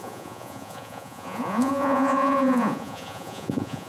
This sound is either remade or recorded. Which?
remade